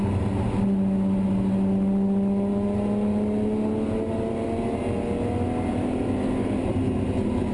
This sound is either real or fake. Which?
real